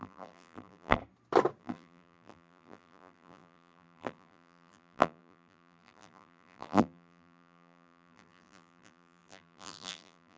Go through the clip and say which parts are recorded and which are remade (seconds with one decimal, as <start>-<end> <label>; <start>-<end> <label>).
0.0-1.0 remade; 1.0-1.6 recorded; 1.6-10.4 remade